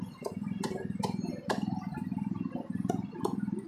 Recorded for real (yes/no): yes